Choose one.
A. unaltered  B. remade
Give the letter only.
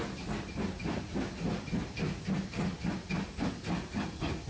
A